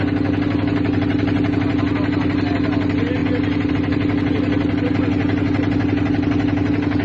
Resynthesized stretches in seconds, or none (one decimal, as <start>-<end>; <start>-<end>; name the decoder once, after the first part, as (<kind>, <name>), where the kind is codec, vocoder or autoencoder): none